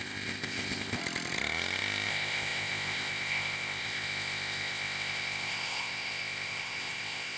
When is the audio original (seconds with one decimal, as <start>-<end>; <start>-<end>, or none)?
1.0-2.1